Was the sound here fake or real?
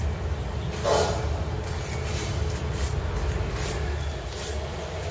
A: real